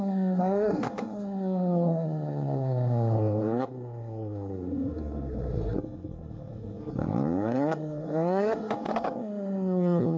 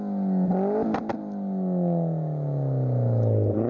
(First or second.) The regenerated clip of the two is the first